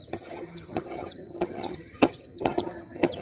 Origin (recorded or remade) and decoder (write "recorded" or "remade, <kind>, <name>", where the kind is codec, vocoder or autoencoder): remade, vocoder, HiFi-GAN